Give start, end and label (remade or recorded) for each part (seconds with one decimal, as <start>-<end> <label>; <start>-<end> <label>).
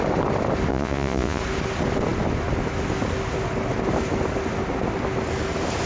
0.0-0.7 recorded; 0.7-1.4 remade; 1.4-5.9 recorded